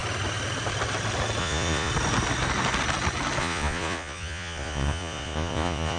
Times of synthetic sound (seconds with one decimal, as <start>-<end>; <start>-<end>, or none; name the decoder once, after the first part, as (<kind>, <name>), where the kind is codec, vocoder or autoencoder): 1.4-1.9 (vocoder, Vocos); 3.4-6.0